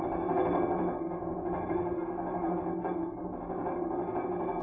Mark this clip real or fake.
fake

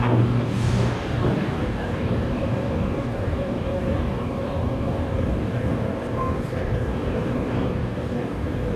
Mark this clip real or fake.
fake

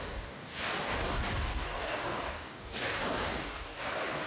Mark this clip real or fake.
fake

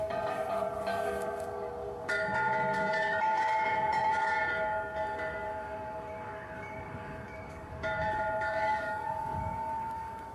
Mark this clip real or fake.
fake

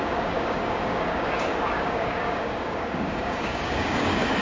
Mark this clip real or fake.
fake